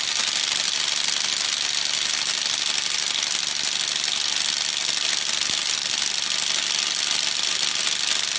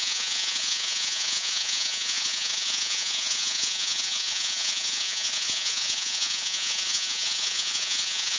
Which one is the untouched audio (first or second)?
first